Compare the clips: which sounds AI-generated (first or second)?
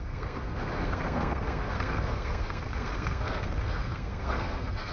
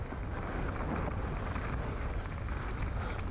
first